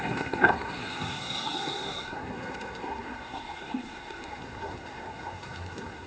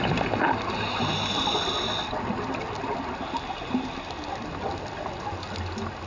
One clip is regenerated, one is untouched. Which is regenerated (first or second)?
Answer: first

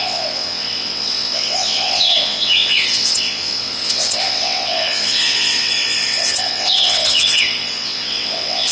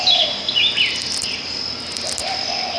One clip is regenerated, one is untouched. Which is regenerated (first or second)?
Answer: first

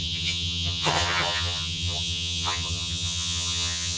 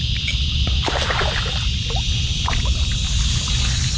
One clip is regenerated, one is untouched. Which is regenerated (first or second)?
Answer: first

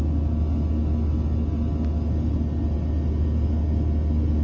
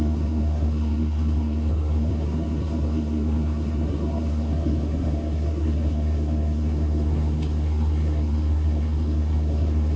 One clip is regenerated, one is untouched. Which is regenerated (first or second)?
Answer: second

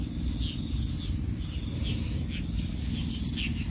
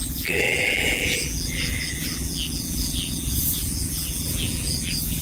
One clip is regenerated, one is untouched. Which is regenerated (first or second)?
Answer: second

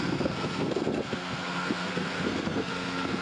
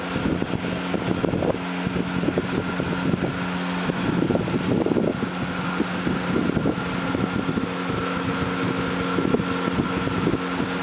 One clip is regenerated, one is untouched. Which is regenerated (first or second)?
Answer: first